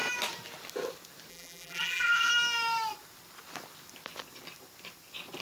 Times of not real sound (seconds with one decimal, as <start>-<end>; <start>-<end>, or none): 1.3-2.3